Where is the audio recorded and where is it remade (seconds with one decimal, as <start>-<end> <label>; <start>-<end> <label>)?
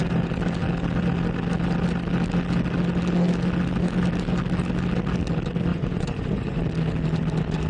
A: 0.0-5.7 recorded; 5.7-6.6 remade; 6.6-7.7 recorded